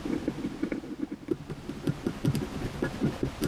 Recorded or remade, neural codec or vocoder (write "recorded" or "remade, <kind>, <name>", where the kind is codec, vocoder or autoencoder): recorded